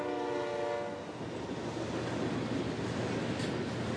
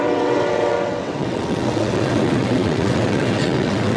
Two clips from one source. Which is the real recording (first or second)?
first